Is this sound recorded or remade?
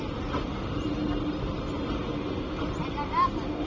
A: recorded